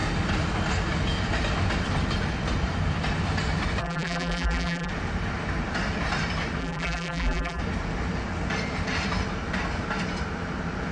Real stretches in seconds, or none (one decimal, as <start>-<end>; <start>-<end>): 0.0-3.8; 4.9-6.6; 7.6-10.9